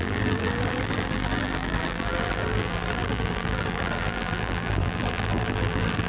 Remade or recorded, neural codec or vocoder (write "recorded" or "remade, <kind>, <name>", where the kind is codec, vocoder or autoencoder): remade, vocoder, BigVGAN v2